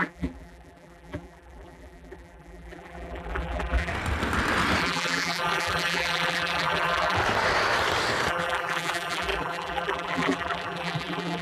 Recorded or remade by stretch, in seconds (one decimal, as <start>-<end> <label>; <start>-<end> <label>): 0.0-3.9 remade; 3.9-4.8 recorded; 4.8-7.2 remade; 7.2-8.3 recorded; 8.3-11.4 remade